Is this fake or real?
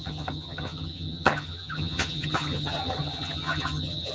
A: fake